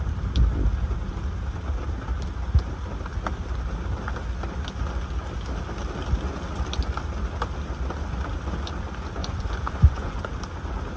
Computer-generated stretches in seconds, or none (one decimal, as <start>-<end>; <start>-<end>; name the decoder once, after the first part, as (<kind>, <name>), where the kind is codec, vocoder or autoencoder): 9.2-10.2 (vocoder, Vocos)